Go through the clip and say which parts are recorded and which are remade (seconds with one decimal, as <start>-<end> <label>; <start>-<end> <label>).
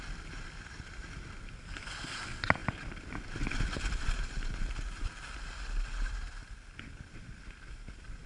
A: 0.0-8.3 recorded